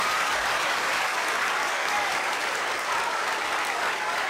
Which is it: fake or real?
fake